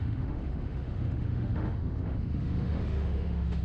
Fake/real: fake